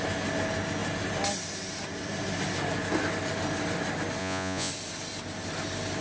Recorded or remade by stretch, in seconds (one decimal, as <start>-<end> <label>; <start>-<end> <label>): 0.0-4.2 recorded; 4.2-4.7 remade; 4.7-6.0 recorded